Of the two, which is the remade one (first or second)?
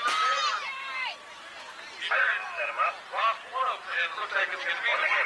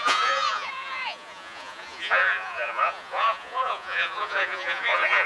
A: second